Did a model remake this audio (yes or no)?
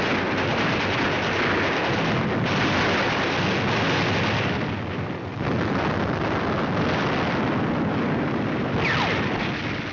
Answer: no